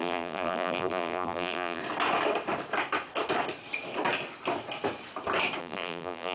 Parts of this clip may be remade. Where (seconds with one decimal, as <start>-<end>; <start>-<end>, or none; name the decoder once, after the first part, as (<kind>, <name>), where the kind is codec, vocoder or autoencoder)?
0.0-1.8 (vocoder, BigVGAN v2); 5.6-6.3